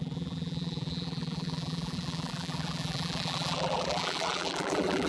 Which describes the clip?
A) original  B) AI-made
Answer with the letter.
B